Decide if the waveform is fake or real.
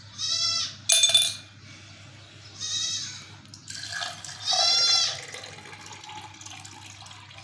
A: real